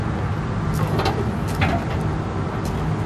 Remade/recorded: recorded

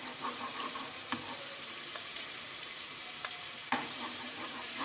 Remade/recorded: remade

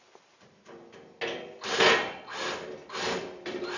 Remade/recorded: recorded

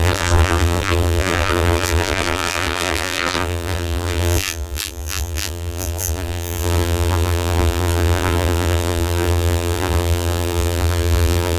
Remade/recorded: remade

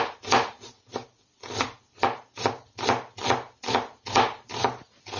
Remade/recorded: recorded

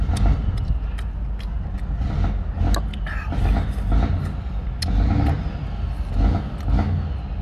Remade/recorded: recorded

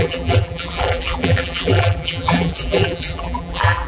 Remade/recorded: remade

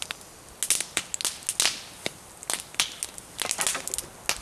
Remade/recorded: recorded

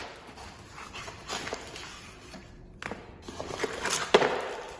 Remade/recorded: recorded